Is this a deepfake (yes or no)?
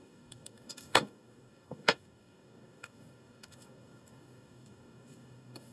yes